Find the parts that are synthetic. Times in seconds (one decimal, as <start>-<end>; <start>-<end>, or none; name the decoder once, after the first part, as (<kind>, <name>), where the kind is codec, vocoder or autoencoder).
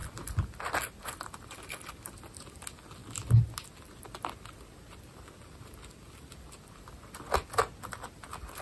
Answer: none